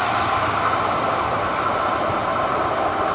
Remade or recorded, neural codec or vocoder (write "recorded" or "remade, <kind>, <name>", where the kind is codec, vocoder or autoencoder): recorded